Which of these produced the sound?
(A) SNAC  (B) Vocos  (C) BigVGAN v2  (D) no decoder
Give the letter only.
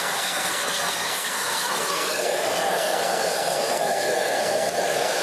A